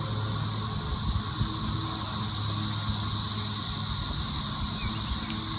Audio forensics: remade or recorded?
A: recorded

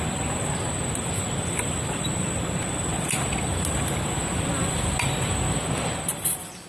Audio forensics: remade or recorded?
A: recorded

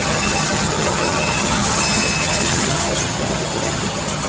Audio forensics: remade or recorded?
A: remade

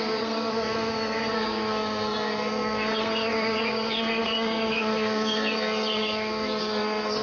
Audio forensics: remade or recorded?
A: remade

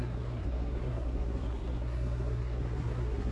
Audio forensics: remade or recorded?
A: remade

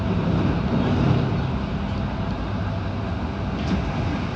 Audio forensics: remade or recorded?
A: recorded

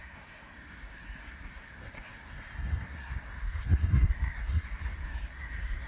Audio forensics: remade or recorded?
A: remade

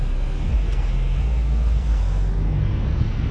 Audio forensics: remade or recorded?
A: remade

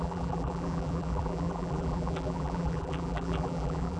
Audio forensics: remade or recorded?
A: remade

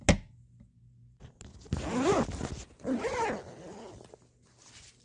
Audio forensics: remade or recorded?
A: recorded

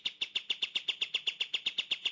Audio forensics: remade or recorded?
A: recorded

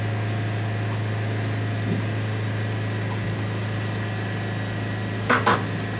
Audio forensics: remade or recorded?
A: recorded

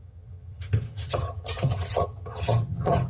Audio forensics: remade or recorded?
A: remade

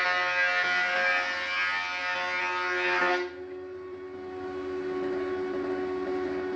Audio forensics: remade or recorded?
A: recorded